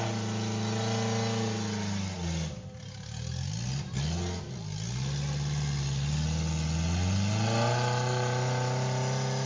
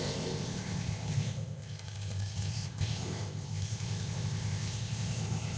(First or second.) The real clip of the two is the first